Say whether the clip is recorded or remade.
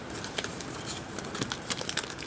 recorded